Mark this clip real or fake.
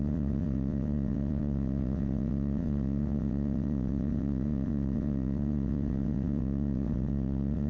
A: fake